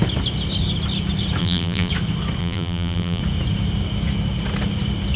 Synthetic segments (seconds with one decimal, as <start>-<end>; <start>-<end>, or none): 1.4-1.9; 2.4-3.2